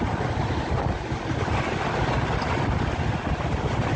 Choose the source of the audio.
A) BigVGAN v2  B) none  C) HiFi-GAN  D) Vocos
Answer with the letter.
B